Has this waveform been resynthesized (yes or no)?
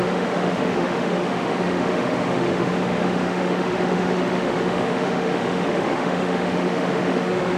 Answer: yes